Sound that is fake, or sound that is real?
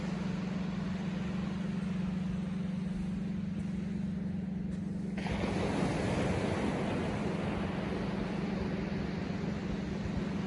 real